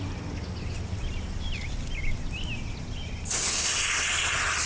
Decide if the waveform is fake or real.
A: real